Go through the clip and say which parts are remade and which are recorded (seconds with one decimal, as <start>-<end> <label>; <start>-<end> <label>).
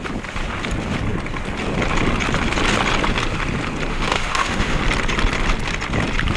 0.0-3.9 recorded; 3.9-4.8 remade; 4.8-6.4 recorded